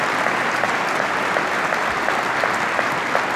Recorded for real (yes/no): yes